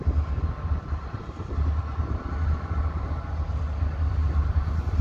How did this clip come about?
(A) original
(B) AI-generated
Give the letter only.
A